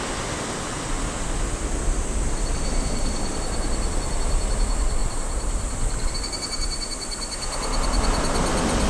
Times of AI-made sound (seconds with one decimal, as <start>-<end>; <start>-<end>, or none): 5.0-6.1